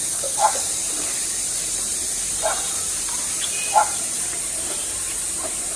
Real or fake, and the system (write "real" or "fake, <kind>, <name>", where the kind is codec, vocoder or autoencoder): fake, vocoder, BigVGAN v2